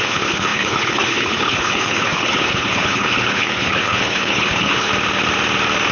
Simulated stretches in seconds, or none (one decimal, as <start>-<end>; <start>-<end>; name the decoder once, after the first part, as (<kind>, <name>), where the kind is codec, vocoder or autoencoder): 0.0-4.9 (codec, HILCodec)